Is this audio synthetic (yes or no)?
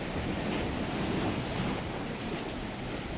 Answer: no